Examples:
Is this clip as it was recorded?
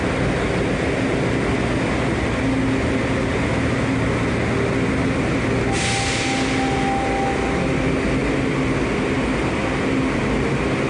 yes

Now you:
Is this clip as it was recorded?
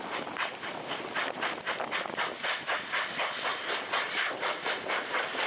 yes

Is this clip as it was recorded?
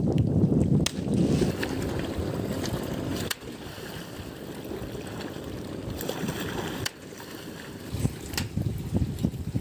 yes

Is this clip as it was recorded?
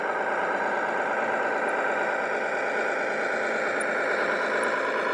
yes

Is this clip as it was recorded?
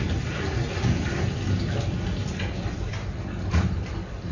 no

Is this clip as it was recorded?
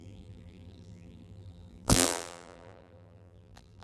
no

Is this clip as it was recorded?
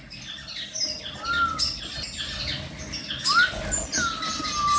yes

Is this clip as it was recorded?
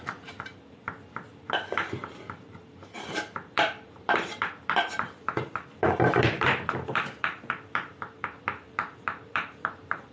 no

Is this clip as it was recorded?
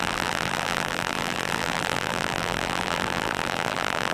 no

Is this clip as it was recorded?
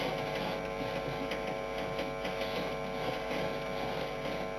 yes